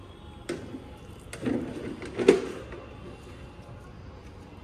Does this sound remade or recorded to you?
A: recorded